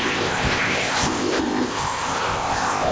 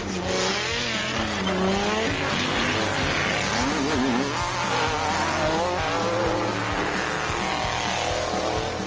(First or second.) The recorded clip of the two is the second